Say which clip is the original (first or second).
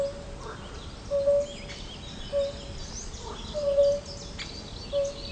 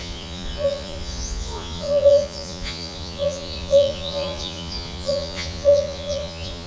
first